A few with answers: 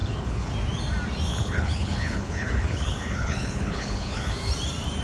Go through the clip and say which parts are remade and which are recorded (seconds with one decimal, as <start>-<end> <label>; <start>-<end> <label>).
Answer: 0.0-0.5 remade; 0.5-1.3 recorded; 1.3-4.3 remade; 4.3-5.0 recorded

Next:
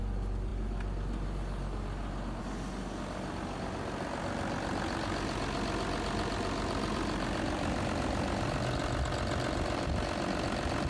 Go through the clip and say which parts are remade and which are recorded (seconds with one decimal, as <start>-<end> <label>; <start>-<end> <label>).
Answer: 0.0-10.9 recorded

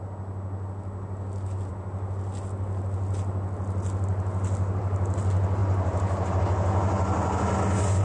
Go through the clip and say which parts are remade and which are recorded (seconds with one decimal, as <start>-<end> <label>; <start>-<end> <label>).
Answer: 0.0-5.6 recorded; 5.6-6.4 remade; 6.4-8.0 recorded

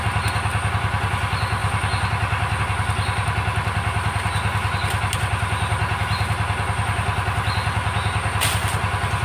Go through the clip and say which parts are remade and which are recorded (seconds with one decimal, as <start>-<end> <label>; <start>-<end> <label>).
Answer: 0.0-9.2 recorded